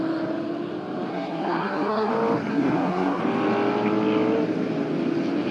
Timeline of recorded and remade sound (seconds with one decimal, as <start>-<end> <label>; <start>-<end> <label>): 0.0-1.1 recorded; 1.1-2.1 remade; 2.1-2.5 recorded; 2.5-3.2 remade; 3.2-5.5 recorded